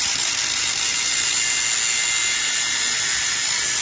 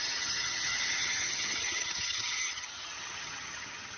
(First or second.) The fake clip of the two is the second